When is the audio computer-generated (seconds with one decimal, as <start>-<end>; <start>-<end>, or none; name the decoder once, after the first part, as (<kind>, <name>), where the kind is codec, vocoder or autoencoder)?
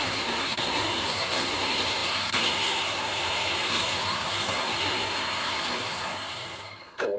0.0-7.2 (codec, SNAC)